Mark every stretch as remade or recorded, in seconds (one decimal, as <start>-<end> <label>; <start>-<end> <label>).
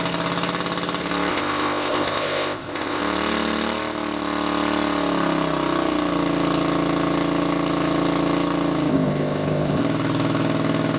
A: 0.0-1.3 recorded; 1.3-3.0 remade; 3.0-8.9 recorded; 8.9-9.8 remade; 9.8-11.0 recorded